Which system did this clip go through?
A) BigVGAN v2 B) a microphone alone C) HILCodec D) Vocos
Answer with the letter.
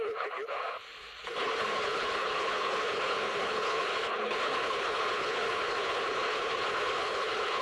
C